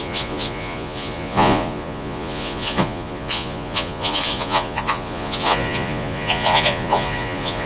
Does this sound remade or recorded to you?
remade